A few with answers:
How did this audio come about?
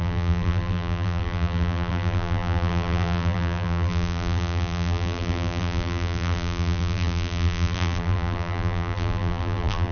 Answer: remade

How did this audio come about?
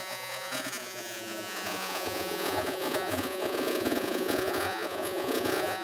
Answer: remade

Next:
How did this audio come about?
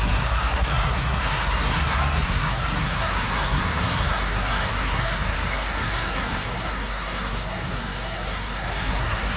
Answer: remade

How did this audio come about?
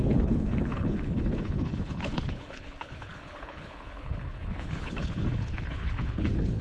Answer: remade